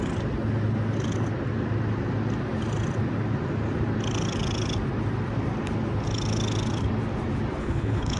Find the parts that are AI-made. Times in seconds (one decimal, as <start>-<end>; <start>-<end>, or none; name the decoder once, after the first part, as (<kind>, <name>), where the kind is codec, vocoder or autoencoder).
7.6-8.2 (codec, HILCodec)